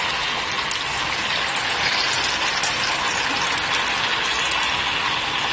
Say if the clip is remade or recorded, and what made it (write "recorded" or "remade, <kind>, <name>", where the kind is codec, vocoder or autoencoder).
recorded